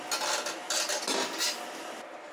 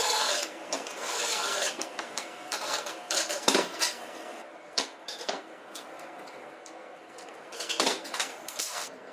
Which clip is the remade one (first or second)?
second